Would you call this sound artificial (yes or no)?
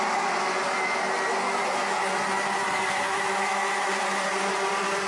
no